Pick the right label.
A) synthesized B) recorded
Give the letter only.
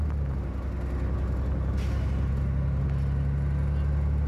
B